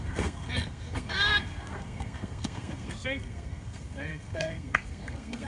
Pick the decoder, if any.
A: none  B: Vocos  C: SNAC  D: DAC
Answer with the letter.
C